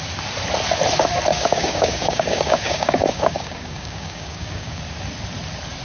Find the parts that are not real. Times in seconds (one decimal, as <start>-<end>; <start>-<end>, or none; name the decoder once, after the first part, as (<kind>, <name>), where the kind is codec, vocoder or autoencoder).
1.3-4.8 (codec, DAC)